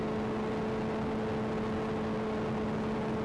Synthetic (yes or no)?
no